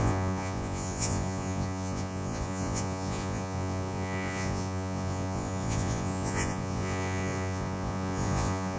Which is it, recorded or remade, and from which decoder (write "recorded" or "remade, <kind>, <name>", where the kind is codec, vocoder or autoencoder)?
remade, vocoder, Vocos